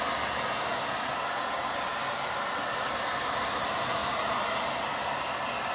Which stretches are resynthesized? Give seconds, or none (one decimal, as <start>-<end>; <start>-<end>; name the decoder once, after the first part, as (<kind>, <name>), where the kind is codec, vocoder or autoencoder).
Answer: 0.7-1.9 (vocoder, BigVGAN v2)